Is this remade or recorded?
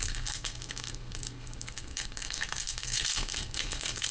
remade